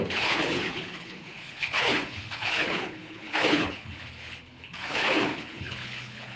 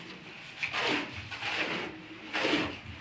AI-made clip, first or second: first